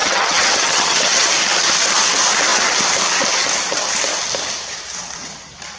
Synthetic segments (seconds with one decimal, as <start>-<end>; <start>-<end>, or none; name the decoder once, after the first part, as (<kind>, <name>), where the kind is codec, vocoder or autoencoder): 0.0-1.3 (vocoder, HiFi-GAN)